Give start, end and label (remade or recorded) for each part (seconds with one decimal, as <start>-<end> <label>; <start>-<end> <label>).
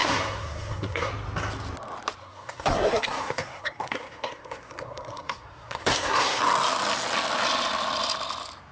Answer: 0.0-1.1 remade; 1.1-2.2 recorded; 2.2-6.4 remade; 6.4-8.7 recorded